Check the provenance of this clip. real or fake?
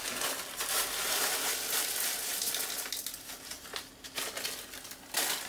real